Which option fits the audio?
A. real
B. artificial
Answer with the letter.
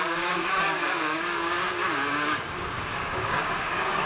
B